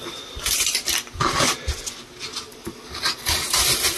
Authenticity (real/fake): real